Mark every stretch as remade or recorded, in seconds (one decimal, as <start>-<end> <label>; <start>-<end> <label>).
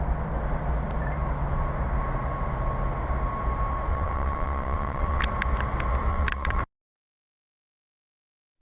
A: 0.0-3.9 recorded; 3.9-5.2 remade; 5.2-6.1 recorded; 6.1-6.6 remade; 6.6-8.6 recorded